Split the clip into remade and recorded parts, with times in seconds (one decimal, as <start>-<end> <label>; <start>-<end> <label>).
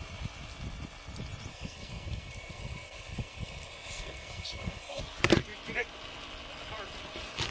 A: 0.0-1.5 recorded; 1.5-5.0 remade; 5.0-7.5 recorded